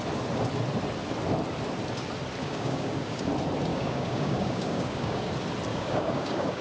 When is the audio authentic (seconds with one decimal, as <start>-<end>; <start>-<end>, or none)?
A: 0.0-2.4; 3.3-3.7; 5.3-5.7